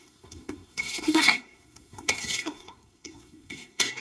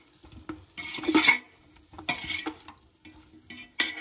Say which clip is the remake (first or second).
first